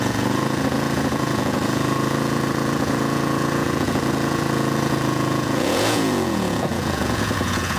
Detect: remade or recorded remade